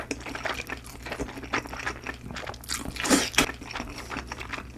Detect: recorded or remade recorded